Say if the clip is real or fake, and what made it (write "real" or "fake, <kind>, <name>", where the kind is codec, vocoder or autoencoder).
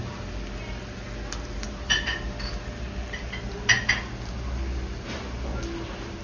real